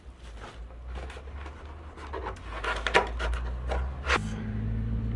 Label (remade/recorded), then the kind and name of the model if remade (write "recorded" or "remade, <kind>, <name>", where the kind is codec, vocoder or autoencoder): recorded